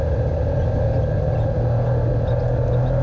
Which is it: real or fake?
real